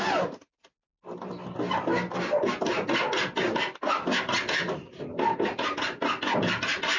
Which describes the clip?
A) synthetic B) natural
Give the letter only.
B